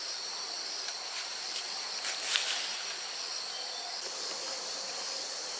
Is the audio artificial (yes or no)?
no